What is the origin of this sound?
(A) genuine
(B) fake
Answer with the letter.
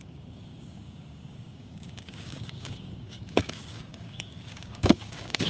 B